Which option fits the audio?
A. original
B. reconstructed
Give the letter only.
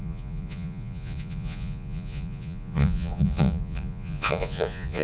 B